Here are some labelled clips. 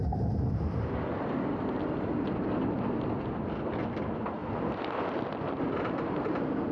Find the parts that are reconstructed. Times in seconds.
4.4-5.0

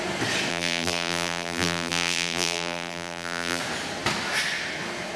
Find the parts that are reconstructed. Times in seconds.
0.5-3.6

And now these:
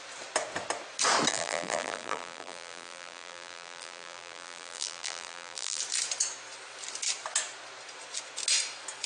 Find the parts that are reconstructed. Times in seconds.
1.3-5.8

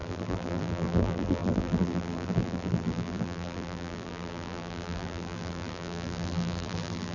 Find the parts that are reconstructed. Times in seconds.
0.0-7.1

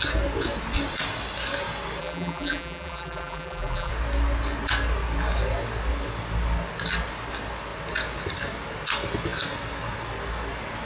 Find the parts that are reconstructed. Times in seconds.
2.0-3.9

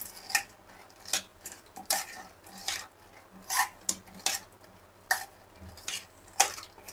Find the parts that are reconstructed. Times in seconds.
1.3-2.9

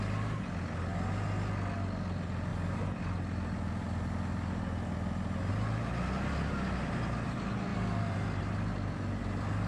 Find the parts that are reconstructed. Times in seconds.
7.7-8.4